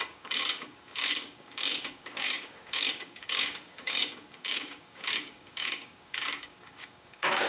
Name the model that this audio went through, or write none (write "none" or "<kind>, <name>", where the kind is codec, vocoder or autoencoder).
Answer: codec, DAC